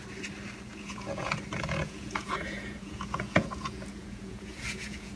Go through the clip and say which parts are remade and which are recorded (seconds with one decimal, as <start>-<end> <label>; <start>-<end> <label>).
0.0-0.7 recorded; 0.7-1.3 remade; 1.3-1.8 recorded; 1.8-5.2 remade